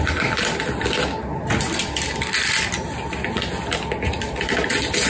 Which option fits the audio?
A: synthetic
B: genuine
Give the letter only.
B